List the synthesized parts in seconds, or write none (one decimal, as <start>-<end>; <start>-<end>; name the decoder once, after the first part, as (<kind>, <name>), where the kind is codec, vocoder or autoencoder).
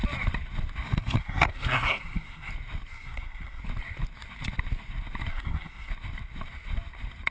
1.2-2.5 (codec, SNAC); 2.9-3.6; 5.3-5.9